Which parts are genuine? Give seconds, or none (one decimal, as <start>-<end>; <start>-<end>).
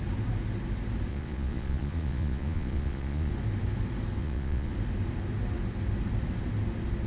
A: 0.0-1.1; 3.3-4.2; 4.7-7.1